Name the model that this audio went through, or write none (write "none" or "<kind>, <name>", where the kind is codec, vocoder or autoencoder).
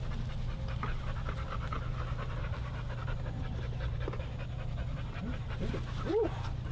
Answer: none